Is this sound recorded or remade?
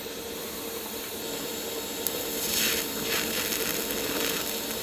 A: recorded